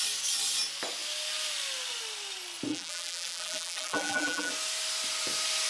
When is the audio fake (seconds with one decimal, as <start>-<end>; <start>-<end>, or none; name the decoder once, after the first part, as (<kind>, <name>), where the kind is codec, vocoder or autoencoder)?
2.7-4.5 (vocoder, BigVGAN v2)